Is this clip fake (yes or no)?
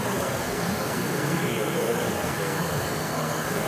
yes